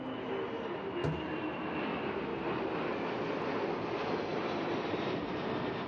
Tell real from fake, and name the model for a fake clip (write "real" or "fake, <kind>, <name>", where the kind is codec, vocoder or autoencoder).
real